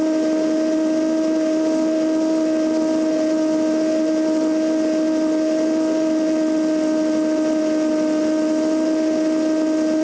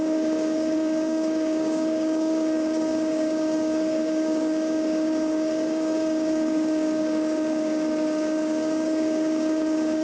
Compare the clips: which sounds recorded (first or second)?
first